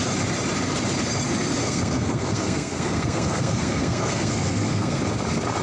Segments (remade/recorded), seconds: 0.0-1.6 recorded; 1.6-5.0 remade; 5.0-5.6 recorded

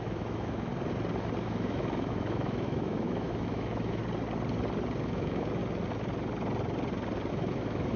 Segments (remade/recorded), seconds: 0.0-0.7 remade; 0.7-1.4 recorded; 1.4-4.0 remade; 4.0-5.0 recorded; 5.0-5.6 remade; 5.6-7.3 recorded; 7.3-8.0 remade

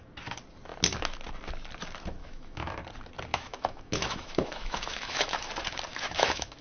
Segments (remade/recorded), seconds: 0.0-2.2 recorded; 2.2-2.8 remade; 2.8-3.3 recorded; 3.3-5.5 remade; 5.5-5.9 recorded; 5.9-6.6 remade

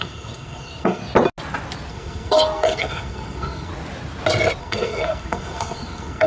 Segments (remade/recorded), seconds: 0.0-1.0 remade; 1.0-1.9 recorded; 1.9-3.7 remade; 3.7-4.6 recorded; 4.6-6.3 remade